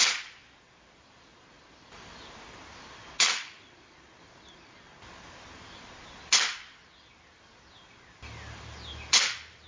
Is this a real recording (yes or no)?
yes